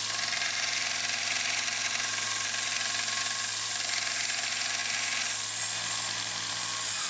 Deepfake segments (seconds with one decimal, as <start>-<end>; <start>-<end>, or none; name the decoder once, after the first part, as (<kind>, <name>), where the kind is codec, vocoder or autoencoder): none